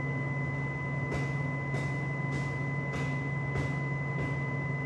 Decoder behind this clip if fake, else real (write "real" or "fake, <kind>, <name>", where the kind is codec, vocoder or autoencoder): real